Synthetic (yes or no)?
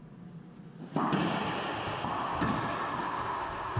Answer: no